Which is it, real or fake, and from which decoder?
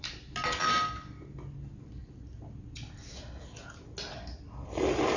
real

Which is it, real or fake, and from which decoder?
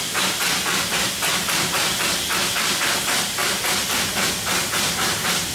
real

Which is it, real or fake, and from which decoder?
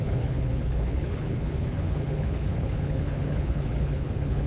fake, codec, HILCodec